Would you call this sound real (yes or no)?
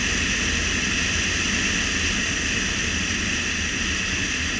yes